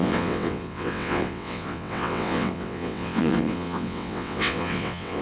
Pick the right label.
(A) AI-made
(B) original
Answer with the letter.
A